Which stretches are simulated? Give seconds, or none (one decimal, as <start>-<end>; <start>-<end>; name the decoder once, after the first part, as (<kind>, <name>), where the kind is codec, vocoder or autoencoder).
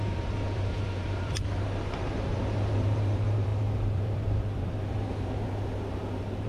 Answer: 0.0-6.5 (vocoder, BigVGAN v2)